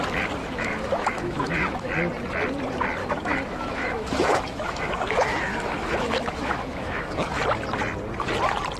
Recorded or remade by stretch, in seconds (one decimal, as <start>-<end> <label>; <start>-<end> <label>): 0.0-0.4 recorded; 0.4-1.9 remade; 1.9-3.0 recorded; 3.0-7.4 remade; 7.4-8.8 recorded